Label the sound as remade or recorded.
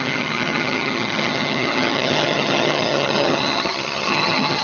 remade